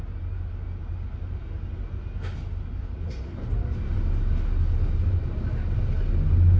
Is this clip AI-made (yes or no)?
no